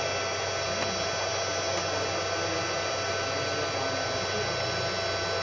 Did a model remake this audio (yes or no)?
no